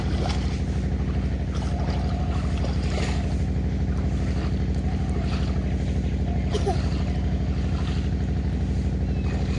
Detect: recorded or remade recorded